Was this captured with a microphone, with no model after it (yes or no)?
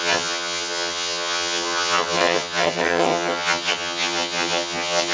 no